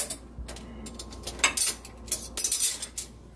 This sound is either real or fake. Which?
real